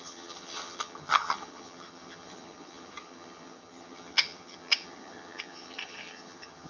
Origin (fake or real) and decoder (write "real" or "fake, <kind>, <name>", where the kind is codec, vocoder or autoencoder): fake, vocoder, HiFi-GAN